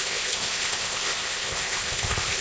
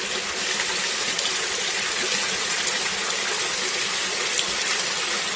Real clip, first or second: second